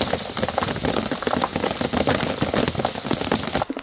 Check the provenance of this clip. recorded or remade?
recorded